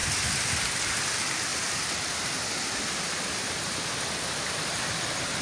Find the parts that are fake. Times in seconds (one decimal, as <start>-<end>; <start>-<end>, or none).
0.0-5.4